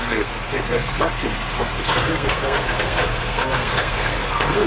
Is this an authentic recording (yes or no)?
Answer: no